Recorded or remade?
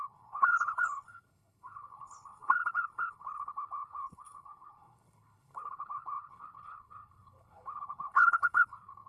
remade